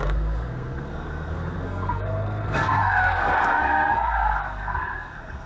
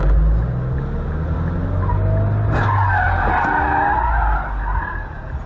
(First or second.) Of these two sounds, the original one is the second